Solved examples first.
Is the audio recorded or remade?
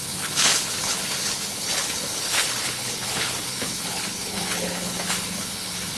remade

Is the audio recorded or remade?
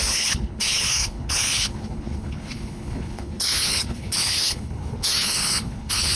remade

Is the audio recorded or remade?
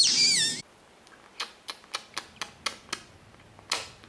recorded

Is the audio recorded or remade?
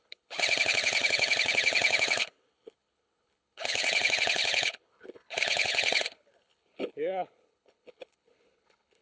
remade